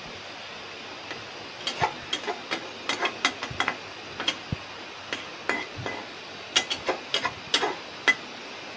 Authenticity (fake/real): real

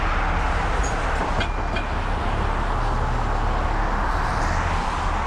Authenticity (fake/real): real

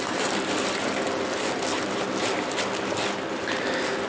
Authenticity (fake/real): real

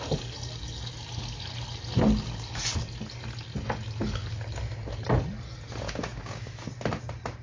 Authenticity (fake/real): real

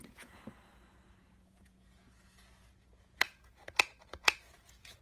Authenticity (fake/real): fake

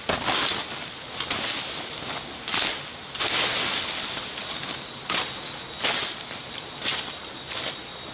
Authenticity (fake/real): real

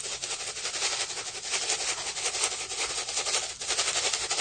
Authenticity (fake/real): real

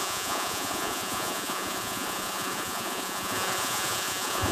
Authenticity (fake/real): fake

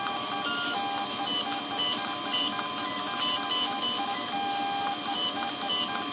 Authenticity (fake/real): real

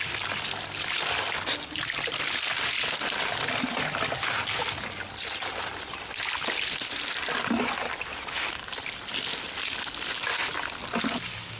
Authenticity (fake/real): real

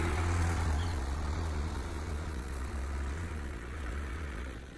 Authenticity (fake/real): fake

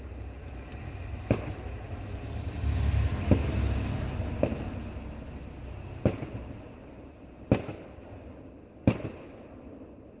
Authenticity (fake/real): real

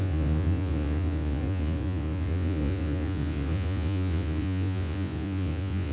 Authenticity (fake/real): fake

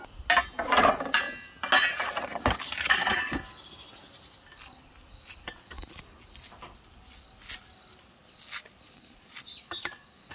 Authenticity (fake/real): real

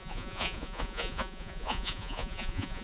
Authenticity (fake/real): fake